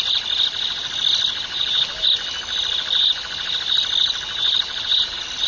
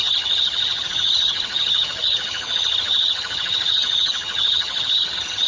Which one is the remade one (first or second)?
second